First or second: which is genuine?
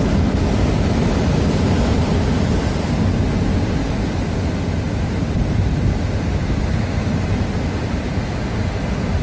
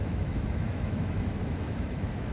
first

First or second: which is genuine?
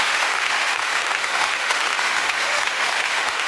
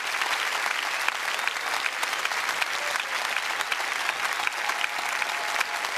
second